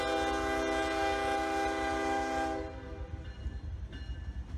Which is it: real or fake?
real